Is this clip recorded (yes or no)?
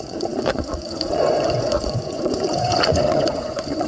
no